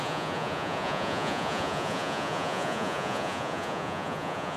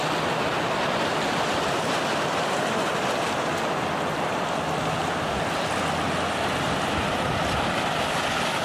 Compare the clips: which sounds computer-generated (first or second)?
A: first